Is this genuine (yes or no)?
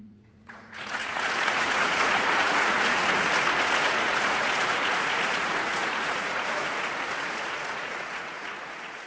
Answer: no